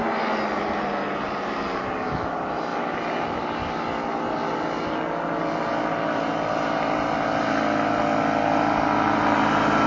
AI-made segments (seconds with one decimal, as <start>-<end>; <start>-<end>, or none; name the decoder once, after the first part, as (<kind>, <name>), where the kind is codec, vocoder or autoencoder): none